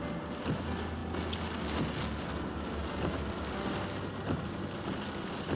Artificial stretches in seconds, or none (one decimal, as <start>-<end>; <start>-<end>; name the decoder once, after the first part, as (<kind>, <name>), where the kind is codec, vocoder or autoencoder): none